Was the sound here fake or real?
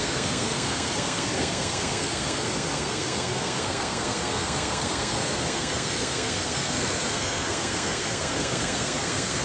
fake